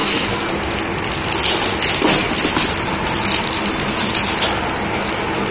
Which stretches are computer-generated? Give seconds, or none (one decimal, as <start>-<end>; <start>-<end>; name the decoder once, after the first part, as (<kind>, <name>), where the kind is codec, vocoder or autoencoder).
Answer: 0.0-0.5 (codec, SNAC)